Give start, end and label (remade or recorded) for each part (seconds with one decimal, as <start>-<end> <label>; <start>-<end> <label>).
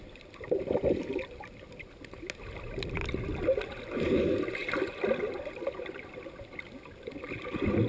0.0-7.9 recorded